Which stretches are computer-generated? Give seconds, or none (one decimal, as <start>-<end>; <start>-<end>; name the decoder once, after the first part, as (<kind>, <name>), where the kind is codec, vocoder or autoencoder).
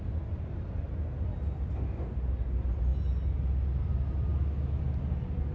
4.3-4.8 (autoencoder, DAC-VAE)